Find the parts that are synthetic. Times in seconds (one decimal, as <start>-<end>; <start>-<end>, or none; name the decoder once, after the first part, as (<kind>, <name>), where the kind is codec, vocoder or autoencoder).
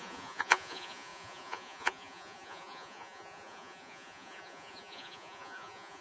0.0-6.0 (vocoder, Vocos)